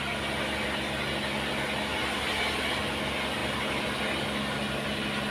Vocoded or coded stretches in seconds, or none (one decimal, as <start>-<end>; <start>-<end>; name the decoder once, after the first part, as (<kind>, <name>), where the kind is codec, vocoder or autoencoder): none